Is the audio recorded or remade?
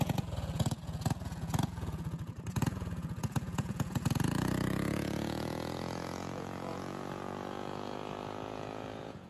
remade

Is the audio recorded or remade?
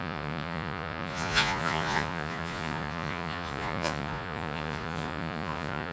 remade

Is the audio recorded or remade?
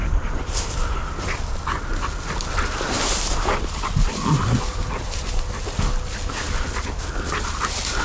recorded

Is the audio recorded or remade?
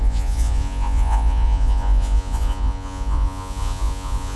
remade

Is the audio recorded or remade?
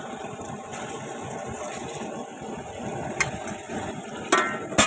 recorded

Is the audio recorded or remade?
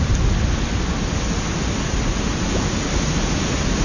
recorded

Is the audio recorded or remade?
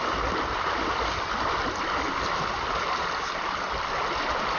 recorded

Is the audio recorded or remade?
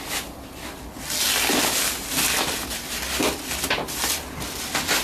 recorded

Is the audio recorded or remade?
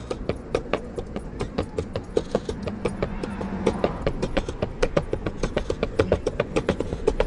remade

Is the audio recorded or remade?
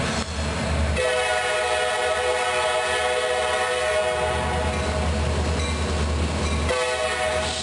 recorded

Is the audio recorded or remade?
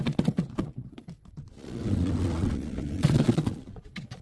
remade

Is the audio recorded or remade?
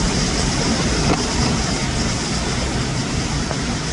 recorded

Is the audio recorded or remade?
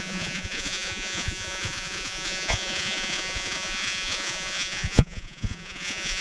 remade